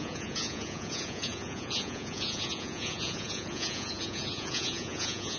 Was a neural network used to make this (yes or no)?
yes